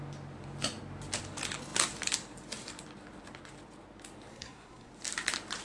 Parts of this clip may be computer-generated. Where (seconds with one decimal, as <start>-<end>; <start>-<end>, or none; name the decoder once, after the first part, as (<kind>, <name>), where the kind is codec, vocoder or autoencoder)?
4.3-4.9 (codec, SNAC)